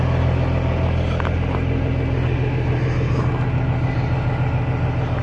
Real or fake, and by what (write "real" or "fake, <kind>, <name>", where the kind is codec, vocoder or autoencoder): real